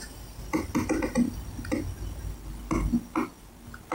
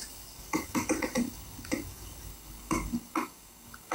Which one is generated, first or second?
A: second